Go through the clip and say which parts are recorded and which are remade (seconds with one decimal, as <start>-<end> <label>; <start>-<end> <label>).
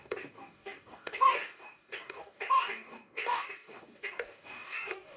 0.0-5.2 remade